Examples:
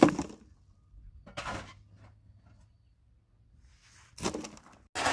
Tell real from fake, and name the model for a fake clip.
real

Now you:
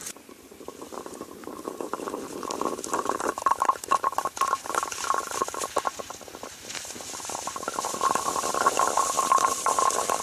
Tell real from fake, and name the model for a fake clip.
real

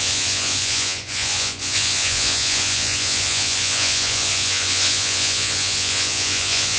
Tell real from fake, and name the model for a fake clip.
fake, vocoder, Vocos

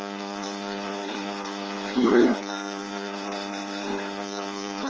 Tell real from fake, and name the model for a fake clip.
fake, codec, SNAC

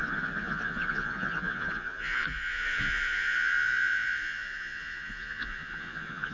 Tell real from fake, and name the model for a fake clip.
fake, vocoder, Vocos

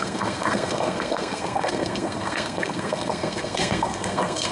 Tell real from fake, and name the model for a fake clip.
fake, codec, SNAC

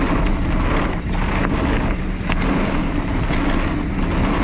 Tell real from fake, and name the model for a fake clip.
real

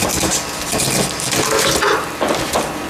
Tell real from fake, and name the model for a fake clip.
real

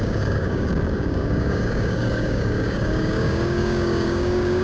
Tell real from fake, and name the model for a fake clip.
fake, codec, DAC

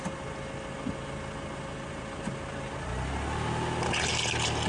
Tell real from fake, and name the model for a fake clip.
real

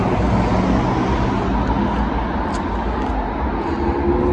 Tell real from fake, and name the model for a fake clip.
real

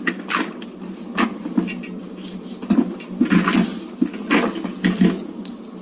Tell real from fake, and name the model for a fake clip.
real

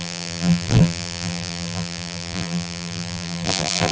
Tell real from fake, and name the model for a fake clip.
fake, vocoder, BigVGAN v2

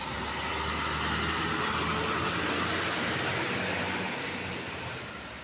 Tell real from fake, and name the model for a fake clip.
real